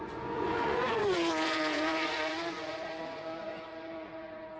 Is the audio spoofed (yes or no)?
yes